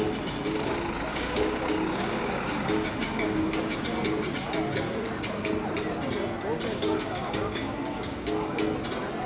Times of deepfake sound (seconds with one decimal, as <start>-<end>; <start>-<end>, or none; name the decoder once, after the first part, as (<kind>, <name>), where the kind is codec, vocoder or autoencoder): 1.1-3.8 (codec, DAC); 6.7-8.6